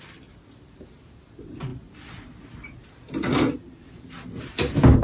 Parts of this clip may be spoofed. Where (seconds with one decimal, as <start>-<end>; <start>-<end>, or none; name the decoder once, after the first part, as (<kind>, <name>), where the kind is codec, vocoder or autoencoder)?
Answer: none